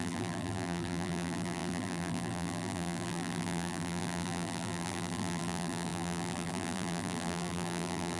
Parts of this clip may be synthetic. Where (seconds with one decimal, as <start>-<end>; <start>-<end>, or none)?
0.0-8.2